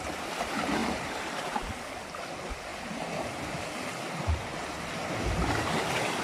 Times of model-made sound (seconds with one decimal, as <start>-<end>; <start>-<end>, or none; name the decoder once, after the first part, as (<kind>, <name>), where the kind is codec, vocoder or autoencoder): 0.8-1.6 (vocoder, BigVGAN v2)